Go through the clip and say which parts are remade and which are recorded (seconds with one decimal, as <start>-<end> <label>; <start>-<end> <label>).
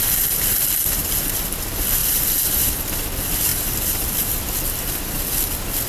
0.0-2.0 recorded; 2.0-2.7 remade; 2.7-5.9 recorded